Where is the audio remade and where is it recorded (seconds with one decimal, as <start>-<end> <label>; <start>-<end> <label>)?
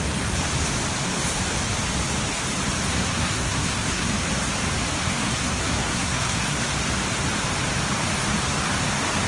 0.0-2.9 recorded; 2.9-4.1 remade; 4.1-5.0 recorded; 5.0-6.6 remade; 6.6-9.3 recorded